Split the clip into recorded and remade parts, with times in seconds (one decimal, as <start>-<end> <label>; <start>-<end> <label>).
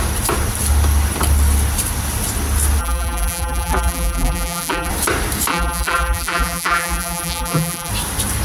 0.0-2.8 recorded; 2.8-4.9 remade; 4.9-5.5 recorded; 5.5-7.9 remade; 7.9-8.4 recorded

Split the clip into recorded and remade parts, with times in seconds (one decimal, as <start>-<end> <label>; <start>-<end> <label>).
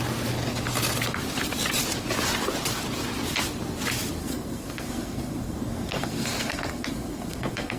0.0-4.2 recorded; 4.2-7.8 remade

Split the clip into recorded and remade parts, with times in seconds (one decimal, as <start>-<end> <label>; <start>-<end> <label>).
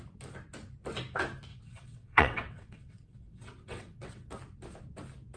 0.0-1.5 recorded; 1.5-4.3 remade; 4.3-5.4 recorded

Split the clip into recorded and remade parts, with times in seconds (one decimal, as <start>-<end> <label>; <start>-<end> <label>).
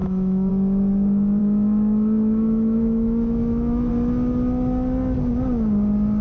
0.0-0.5 remade; 0.5-1.4 recorded; 1.4-3.9 remade; 3.9-6.2 recorded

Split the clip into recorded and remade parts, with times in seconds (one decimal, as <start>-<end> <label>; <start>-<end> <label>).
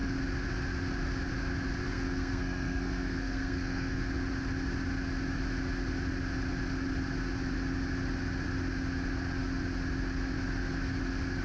0.0-1.9 recorded; 1.9-4.1 remade; 4.1-11.4 recorded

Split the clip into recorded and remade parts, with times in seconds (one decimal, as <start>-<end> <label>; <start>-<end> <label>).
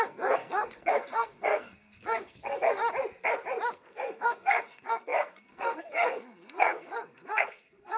0.0-2.8 remade; 2.8-3.7 recorded; 3.7-8.0 remade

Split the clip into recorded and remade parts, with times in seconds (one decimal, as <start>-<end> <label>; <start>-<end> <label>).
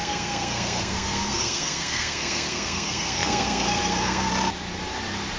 0.0-4.3 remade; 4.3-5.4 recorded